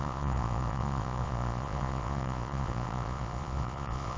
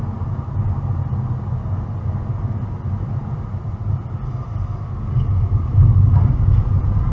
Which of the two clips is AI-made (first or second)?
first